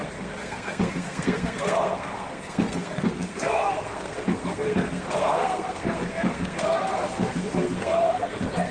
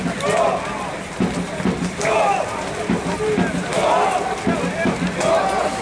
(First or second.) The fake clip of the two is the first